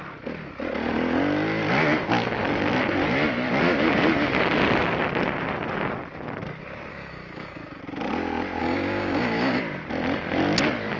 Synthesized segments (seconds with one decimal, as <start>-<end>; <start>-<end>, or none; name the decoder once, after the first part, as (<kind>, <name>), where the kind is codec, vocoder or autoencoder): 6.9-7.8 (codec, DAC); 8.6-9.6